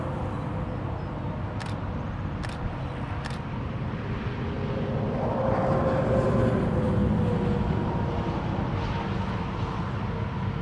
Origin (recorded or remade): recorded